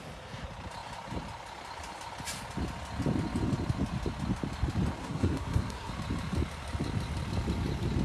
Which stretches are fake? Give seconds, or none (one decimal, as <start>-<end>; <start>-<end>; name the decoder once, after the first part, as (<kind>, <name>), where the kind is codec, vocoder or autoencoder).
5.0-5.9 (codec, SNAC)